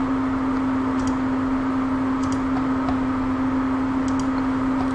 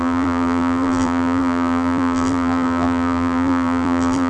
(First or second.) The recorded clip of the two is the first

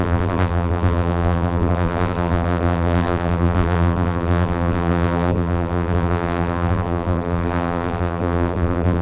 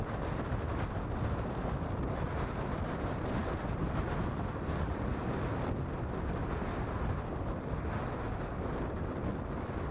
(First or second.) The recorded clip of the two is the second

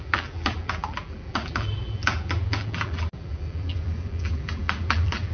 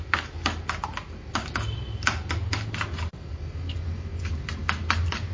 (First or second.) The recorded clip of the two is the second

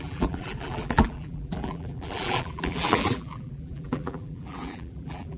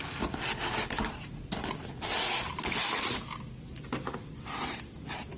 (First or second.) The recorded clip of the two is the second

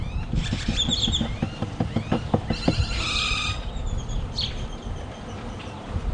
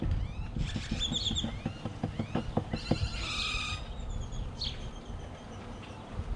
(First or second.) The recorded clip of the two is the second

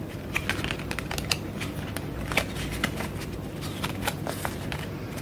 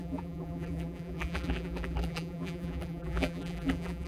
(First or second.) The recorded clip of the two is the first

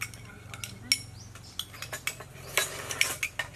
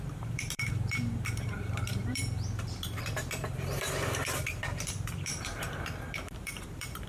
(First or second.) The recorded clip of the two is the first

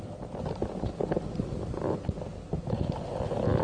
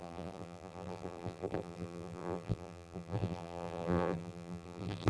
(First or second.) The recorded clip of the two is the first